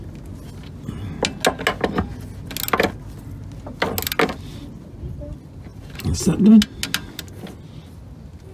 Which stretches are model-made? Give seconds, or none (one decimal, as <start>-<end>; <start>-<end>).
none